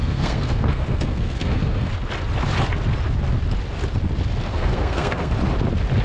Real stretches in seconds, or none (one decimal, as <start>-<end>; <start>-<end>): 1.9-4.5; 5.3-6.0